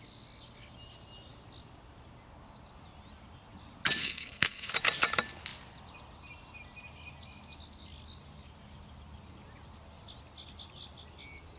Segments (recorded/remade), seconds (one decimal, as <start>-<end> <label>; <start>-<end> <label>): 0.0-4.0 recorded; 4.0-4.7 remade; 4.7-11.6 recorded